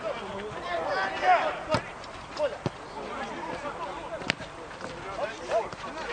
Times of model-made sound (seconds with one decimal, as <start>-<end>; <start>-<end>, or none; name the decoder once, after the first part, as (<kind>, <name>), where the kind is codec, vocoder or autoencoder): none